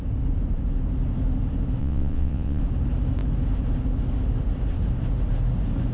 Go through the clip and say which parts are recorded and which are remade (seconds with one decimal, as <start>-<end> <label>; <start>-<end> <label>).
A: 0.0-1.8 recorded; 1.8-2.6 remade; 2.6-5.9 recorded